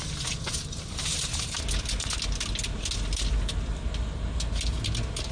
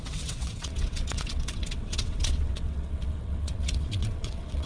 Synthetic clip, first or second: second